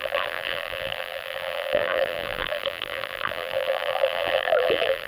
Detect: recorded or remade remade